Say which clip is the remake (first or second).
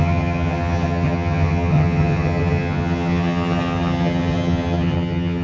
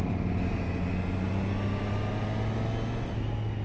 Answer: first